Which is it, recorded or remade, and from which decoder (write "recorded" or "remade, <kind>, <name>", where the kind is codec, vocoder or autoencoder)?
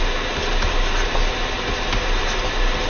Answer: recorded